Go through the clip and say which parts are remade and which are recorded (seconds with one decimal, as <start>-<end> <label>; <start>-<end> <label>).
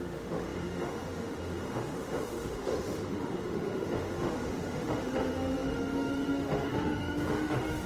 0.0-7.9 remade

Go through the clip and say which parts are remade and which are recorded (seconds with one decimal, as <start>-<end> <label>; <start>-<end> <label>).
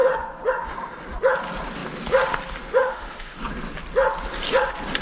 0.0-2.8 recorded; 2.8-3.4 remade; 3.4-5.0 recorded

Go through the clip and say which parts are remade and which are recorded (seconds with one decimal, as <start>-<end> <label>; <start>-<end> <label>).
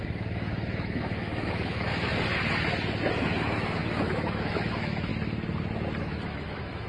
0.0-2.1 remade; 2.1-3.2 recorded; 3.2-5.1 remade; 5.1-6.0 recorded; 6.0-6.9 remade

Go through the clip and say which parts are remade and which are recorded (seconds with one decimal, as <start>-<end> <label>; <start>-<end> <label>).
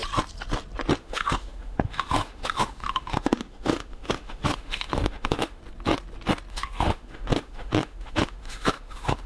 0.0-1.0 recorded; 1.0-5.6 remade; 5.6-6.5 recorded; 6.5-9.3 remade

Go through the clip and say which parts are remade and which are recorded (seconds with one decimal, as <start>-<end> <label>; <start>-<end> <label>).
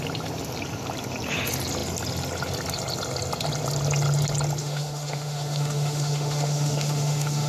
0.0-4.6 recorded; 4.6-7.5 remade